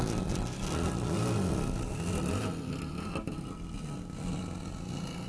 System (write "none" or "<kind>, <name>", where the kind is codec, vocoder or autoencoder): none